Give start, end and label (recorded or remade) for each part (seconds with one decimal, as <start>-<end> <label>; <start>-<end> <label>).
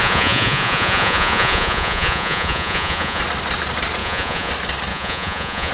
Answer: 0.0-3.2 remade; 3.2-4.0 recorded; 4.0-4.5 remade; 4.5-4.9 recorded; 4.9-5.7 remade